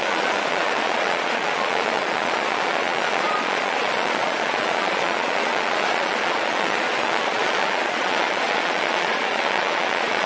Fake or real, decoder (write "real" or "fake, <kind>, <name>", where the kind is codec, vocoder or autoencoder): fake, vocoder, Vocos